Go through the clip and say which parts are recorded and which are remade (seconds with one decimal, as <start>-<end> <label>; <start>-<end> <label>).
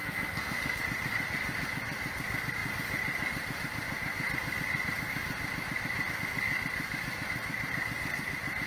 0.0-0.8 remade; 0.8-8.7 recorded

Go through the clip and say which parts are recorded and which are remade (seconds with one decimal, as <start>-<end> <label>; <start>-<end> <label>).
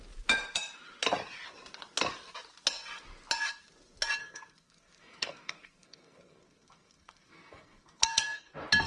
0.0-4.2 recorded; 4.2-8.5 remade; 8.5-8.9 recorded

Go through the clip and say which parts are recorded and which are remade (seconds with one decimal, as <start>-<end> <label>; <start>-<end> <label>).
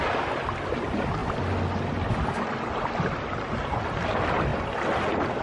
0.0-4.5 recorded; 4.5-5.4 remade